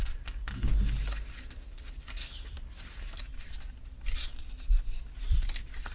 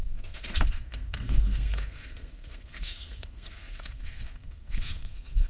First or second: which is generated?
second